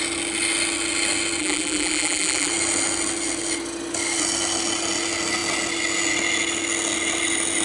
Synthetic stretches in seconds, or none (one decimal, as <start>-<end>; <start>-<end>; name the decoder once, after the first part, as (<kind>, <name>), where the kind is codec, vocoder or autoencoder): 1.4-2.5 (vocoder, BigVGAN v2)